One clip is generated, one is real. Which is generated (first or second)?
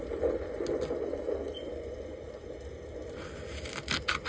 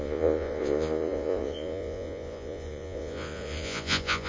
second